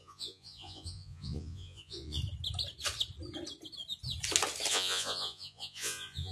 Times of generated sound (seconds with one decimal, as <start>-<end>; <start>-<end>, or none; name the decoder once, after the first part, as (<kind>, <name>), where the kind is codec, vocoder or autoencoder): 0.0-2.2 (vocoder, Vocos); 4.7-6.3